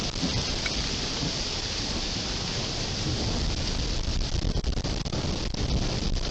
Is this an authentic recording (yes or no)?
yes